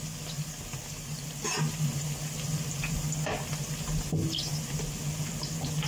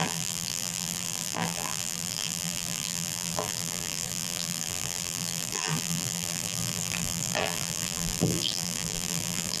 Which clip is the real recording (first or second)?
first